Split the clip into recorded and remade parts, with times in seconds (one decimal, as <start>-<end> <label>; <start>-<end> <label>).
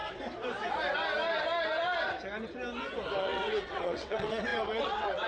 0.0-3.2 recorded; 3.2-5.3 remade